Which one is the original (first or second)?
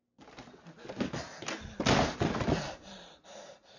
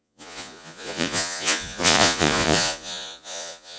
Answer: first